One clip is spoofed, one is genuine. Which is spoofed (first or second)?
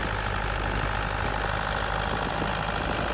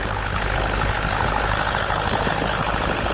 second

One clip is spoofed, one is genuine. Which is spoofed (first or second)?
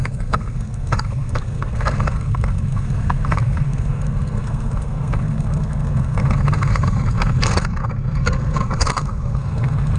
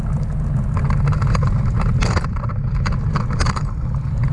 first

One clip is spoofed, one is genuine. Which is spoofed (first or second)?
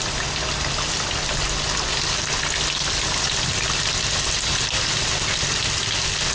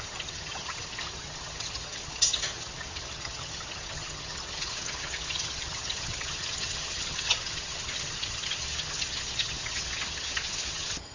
second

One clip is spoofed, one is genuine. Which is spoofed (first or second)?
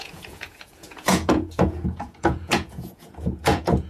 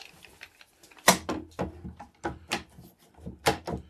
first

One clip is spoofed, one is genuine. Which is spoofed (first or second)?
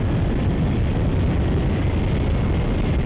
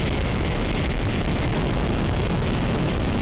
second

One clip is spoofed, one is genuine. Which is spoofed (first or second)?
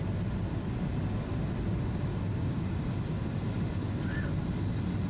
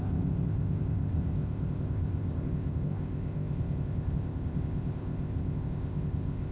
second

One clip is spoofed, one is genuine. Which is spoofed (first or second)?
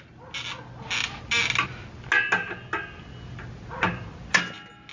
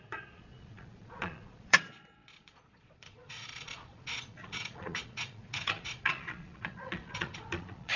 second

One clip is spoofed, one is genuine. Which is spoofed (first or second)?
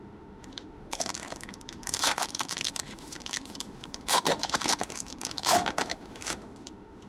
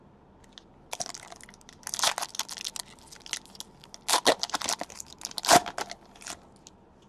first